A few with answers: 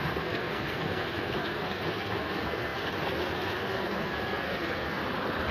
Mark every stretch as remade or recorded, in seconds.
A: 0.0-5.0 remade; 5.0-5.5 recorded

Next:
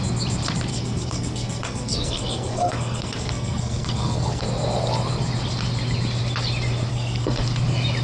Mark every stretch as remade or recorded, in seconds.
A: 0.0-0.7 recorded; 0.7-4.4 remade; 4.4-6.9 recorded; 6.9-7.4 remade; 7.4-8.0 recorded

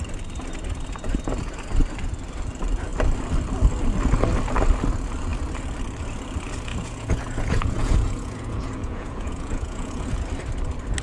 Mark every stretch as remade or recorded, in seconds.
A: 0.0-6.7 recorded; 6.7-10.1 remade; 10.1-11.0 recorded

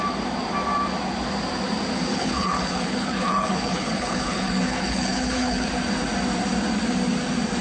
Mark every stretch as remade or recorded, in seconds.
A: 0.0-2.1 recorded; 2.1-5.7 remade; 5.7-7.6 recorded